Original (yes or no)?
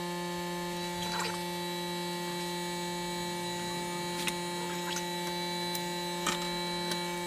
yes